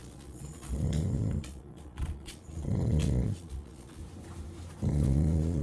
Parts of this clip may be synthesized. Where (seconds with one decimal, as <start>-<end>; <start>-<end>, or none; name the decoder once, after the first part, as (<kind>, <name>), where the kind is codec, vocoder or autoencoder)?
0.0-4.0 (vocoder, Vocos); 4.9-5.6